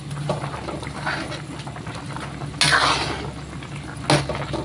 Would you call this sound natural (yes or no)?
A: yes